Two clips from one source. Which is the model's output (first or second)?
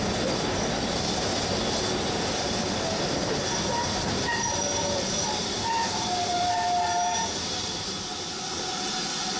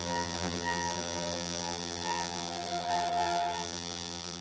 second